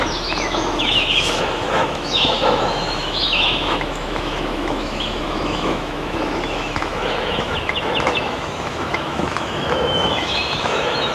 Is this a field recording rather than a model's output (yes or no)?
no